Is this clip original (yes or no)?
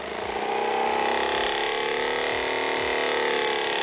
yes